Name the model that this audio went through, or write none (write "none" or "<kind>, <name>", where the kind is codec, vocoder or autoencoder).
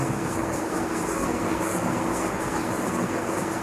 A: codec, SNAC